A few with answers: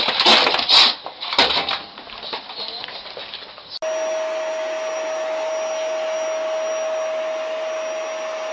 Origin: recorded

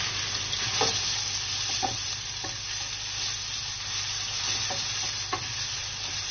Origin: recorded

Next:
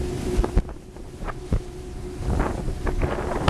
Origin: recorded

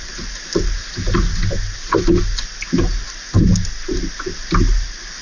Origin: recorded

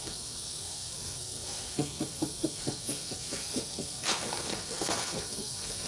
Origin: remade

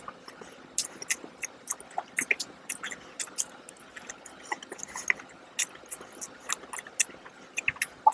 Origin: recorded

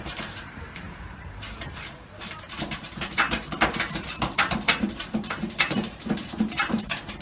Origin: remade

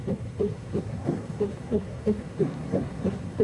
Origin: remade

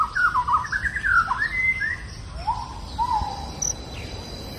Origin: recorded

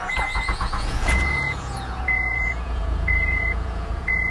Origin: remade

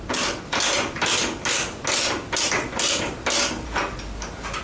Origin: recorded